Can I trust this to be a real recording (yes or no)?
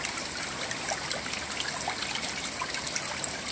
yes